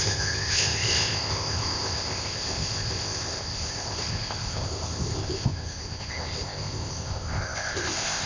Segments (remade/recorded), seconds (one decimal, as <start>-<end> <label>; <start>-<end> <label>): 0.0-8.3 remade